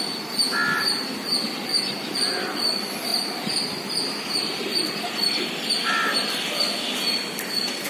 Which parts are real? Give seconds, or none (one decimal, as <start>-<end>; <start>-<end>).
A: 0.0-3.1; 6.5-7.9